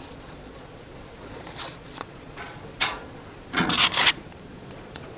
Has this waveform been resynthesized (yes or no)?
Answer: yes